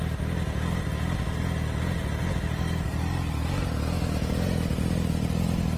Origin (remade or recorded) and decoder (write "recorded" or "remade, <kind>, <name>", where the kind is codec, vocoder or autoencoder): recorded